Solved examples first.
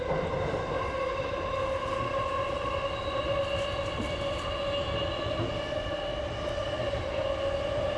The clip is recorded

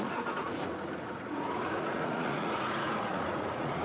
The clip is remade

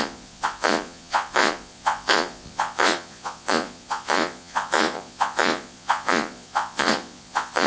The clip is remade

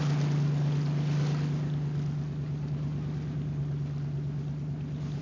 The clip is recorded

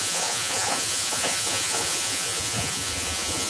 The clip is remade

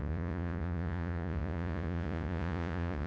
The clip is remade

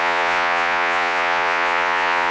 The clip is remade